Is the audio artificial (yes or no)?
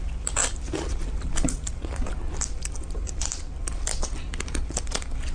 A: no